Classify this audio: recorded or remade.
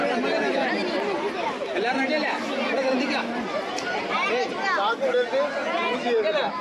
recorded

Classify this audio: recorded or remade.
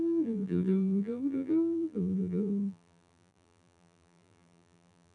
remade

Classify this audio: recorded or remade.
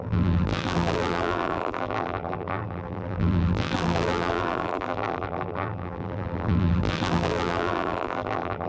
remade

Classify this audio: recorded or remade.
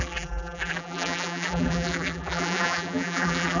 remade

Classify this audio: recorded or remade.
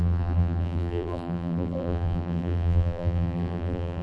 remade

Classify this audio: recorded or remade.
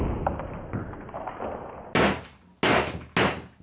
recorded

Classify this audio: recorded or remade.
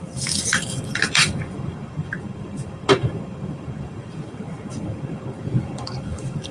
remade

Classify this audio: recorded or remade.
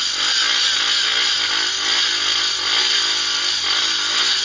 recorded